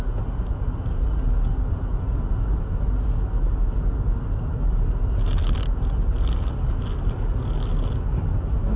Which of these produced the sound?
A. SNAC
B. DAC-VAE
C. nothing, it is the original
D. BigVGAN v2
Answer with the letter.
C